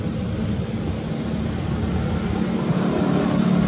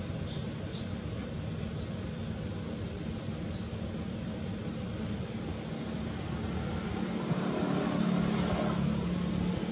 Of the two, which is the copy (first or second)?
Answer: first